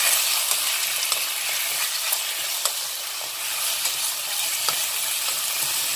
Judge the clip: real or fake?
real